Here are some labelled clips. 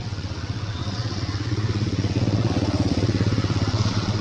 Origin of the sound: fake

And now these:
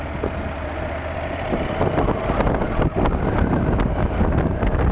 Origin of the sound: real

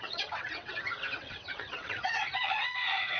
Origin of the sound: fake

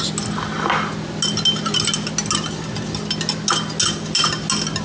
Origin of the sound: real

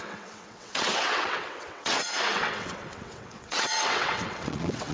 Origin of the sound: fake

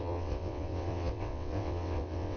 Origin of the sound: fake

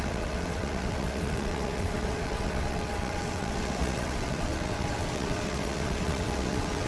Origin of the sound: fake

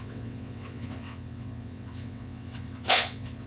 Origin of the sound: fake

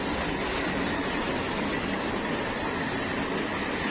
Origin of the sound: real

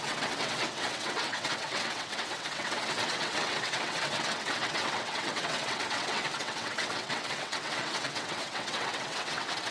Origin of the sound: fake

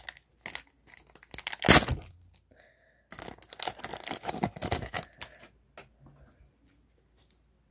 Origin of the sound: real